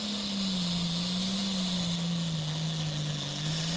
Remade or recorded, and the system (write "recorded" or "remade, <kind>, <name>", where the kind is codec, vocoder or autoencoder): recorded